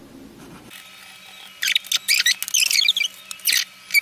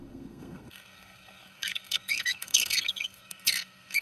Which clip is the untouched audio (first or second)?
first